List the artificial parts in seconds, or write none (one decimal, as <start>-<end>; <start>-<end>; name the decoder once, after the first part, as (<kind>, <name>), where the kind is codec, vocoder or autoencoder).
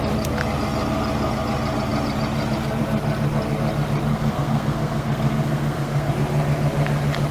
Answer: 4.1-6.1 (codec, SNAC)